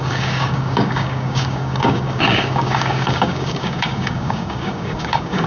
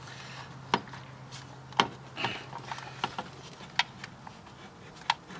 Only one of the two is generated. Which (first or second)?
first